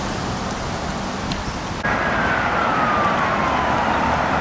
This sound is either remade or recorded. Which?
recorded